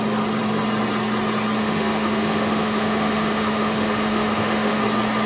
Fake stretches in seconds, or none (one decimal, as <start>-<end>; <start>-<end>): 1.6-4.8